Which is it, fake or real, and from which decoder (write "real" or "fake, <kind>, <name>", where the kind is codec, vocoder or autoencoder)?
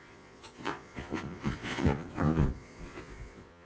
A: fake, vocoder, Vocos